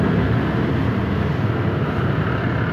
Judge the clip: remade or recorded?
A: recorded